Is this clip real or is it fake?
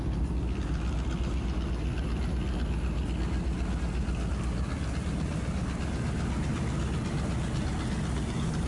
real